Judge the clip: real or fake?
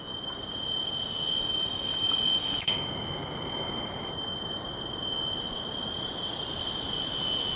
real